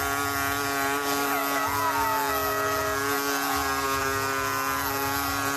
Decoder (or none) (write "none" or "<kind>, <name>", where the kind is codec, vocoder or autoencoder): none